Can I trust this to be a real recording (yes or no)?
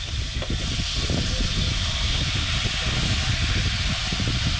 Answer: yes